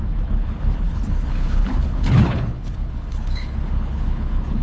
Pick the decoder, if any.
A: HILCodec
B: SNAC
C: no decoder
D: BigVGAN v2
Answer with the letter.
A